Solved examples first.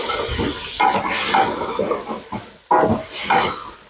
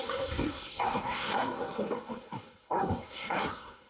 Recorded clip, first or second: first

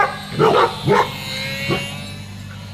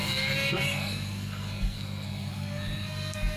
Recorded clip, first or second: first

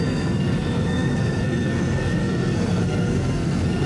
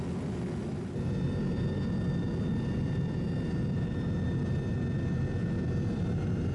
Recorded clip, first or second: second